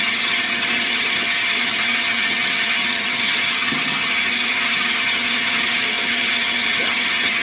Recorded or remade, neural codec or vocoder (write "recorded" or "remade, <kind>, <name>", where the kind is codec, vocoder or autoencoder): remade, vocoder, HiFi-GAN